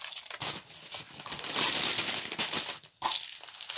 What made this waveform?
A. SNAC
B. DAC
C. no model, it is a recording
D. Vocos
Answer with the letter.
C